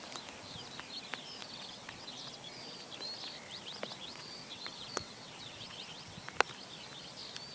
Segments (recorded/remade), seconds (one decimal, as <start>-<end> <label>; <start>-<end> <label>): 0.0-1.4 recorded; 1.4-2.8 remade; 2.8-4.1 recorded; 4.1-6.2 remade; 6.2-7.5 recorded